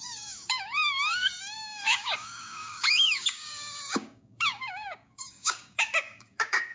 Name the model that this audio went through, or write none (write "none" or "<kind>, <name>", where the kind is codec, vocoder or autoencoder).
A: codec, DAC